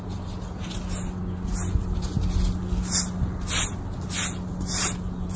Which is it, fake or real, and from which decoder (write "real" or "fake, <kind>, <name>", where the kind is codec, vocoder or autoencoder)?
real